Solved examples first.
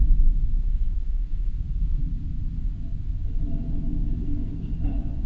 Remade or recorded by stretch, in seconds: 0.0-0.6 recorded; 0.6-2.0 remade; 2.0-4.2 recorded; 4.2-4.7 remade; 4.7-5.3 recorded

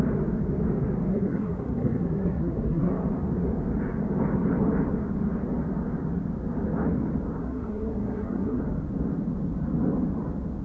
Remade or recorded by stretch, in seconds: 0.0-1.1 recorded; 1.1-2.9 remade; 2.9-7.4 recorded; 7.4-8.6 remade; 8.6-10.6 recorded

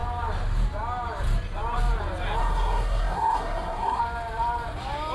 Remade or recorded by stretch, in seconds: 0.0-2.4 recorded; 2.4-4.0 remade; 4.0-5.1 recorded

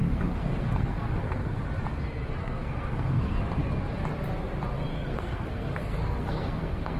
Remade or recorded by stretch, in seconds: 0.0-1.6 remade; 1.6-2.4 recorded; 2.4-3.4 remade; 3.4-4.9 recorded; 4.9-7.0 remade

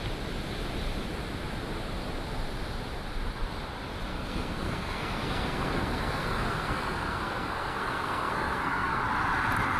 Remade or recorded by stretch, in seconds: 0.0-4.1 recorded; 4.1-9.0 remade; 9.0-9.8 recorded

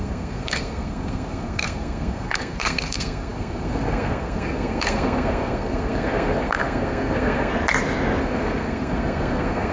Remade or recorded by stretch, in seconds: 0.0-7.5 remade; 7.5-8.2 recorded; 8.2-9.7 remade

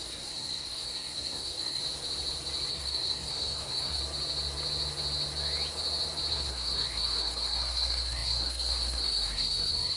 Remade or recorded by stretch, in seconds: 0.0-1.8 remade; 1.8-2.7 recorded; 2.7-4.0 remade; 4.0-6.3 recorded; 6.3-10.0 remade

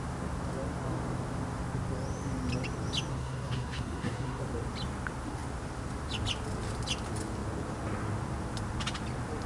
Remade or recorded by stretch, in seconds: 0.0-3.1 recorded; 3.1-4.4 remade; 4.4-9.5 recorded